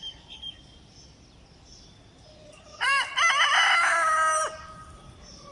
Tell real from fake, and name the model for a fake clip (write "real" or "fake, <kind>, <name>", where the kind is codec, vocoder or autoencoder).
fake, vocoder, BigVGAN v2